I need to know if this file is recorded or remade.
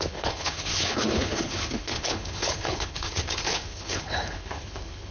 remade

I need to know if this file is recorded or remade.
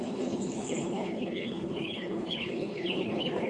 remade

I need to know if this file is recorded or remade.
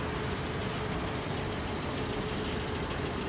recorded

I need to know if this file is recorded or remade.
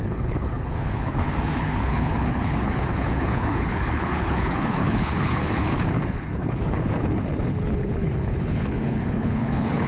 remade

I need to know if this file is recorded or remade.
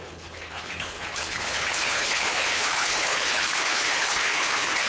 remade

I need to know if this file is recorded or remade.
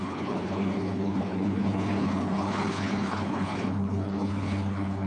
remade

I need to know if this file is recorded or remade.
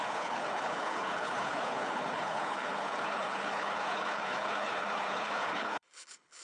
remade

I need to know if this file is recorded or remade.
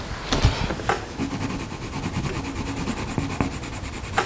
recorded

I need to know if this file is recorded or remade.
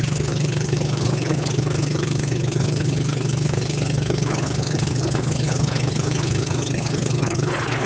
remade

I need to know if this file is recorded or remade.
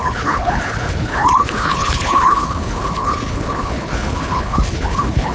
remade